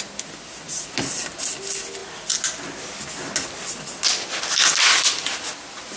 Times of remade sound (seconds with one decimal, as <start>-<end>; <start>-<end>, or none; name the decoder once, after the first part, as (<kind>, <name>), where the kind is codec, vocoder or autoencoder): none